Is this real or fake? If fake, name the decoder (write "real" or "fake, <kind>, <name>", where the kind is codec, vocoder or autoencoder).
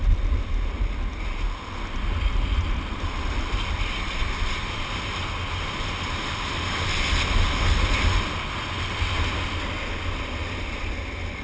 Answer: real